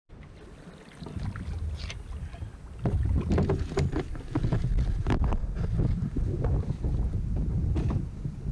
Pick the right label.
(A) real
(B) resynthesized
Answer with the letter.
A